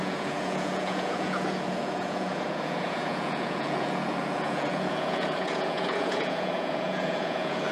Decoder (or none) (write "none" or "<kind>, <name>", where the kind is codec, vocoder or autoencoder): vocoder, Vocos